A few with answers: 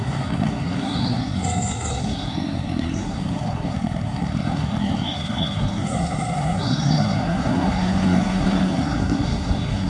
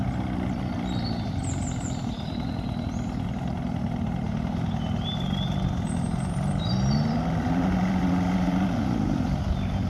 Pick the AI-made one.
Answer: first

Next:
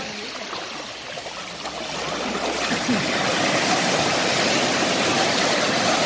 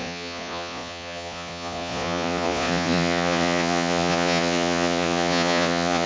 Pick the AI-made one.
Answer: second